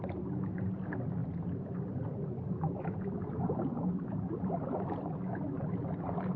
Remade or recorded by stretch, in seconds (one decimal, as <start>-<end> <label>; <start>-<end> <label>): 0.0-6.4 recorded